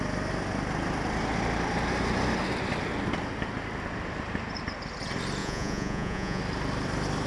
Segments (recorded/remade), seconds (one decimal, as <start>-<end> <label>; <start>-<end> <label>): 0.0-5.4 recorded; 5.4-6.4 remade; 6.4-7.3 recorded